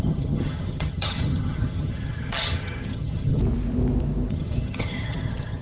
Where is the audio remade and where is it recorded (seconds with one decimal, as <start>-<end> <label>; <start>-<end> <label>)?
0.0-3.4 remade; 3.4-4.3 recorded; 4.3-5.6 remade